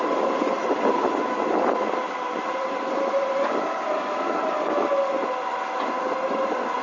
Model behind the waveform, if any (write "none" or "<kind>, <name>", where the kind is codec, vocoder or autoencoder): none